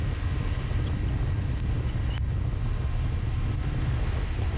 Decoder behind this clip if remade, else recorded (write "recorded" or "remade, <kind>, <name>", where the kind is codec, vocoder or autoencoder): recorded